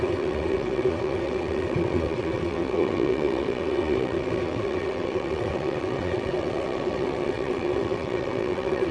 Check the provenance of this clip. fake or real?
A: fake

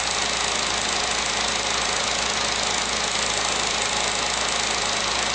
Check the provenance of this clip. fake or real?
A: real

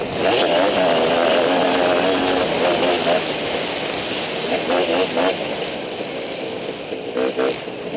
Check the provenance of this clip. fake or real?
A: real